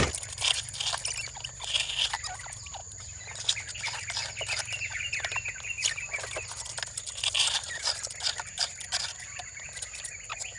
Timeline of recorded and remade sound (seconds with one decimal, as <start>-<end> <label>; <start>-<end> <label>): 0.0-10.6 recorded